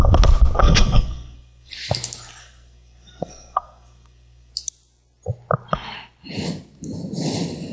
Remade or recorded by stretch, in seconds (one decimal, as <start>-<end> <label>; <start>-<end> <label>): 0.0-0.6 recorded; 0.6-1.7 remade; 1.7-2.4 recorded; 2.4-4.5 remade; 4.5-7.7 recorded